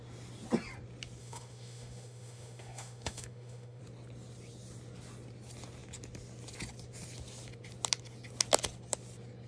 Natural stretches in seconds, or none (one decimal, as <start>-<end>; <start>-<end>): 0.0-1.2; 3.8-9.5